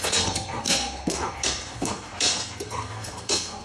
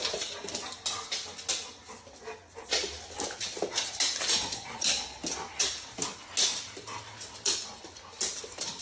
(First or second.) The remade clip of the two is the first